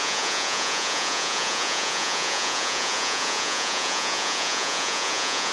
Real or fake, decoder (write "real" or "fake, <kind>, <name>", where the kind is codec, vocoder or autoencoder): fake, vocoder, Vocos